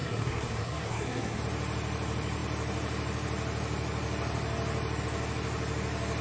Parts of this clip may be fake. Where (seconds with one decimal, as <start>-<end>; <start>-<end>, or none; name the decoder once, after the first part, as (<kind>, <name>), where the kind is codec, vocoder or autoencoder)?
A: 0.0-1.4 (codec, SNAC)